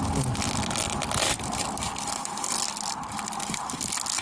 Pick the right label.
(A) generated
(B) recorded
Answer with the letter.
B